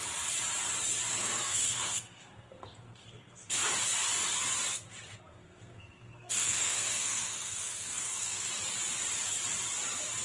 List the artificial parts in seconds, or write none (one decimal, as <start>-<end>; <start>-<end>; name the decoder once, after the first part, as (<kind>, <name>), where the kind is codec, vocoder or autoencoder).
1.2-3.5 (codec, SNAC); 5.3-8.5